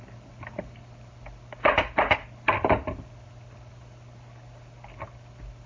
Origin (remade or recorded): recorded